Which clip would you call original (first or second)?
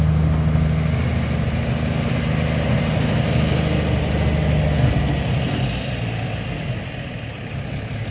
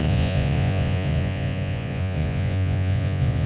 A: first